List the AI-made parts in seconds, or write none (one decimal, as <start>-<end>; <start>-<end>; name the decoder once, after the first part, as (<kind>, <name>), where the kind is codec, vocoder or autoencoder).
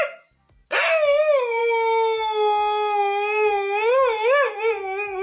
none